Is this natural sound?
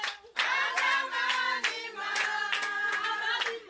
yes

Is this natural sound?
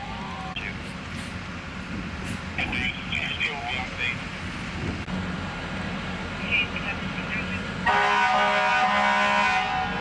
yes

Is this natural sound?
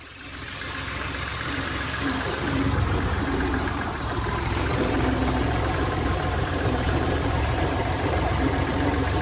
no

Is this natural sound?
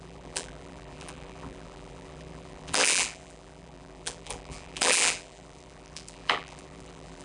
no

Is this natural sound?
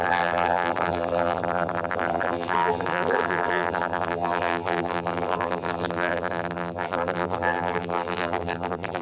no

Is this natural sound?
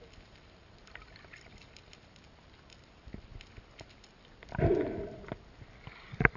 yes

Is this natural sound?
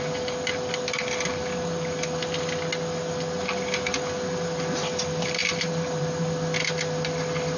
yes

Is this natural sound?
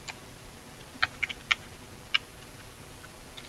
yes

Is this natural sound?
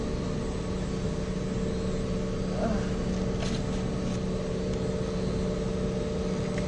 yes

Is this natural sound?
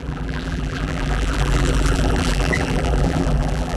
no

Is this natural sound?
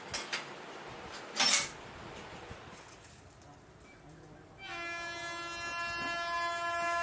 yes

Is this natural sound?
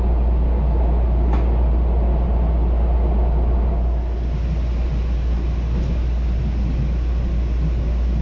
yes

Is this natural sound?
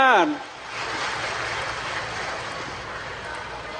yes